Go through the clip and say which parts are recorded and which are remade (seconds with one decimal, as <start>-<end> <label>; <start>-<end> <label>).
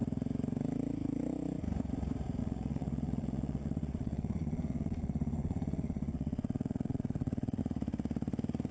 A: 0.0-2.4 recorded; 2.4-7.6 remade; 7.6-8.7 recorded